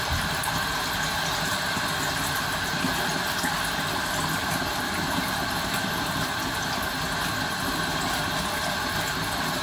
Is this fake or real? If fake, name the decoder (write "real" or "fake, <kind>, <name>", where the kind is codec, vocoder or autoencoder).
real